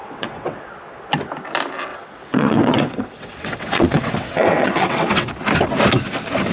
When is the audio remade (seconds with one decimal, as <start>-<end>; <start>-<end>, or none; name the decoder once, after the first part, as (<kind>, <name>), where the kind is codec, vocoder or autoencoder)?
0.0-0.7 (vocoder, WaveNeXt); 1.9-5.3